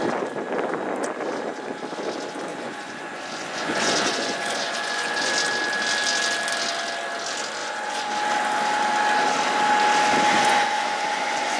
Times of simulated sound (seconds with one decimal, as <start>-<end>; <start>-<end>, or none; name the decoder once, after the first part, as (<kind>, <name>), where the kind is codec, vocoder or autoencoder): 2.5-5.3 (vocoder, Vocos); 7.6-8.1; 10.3-11.6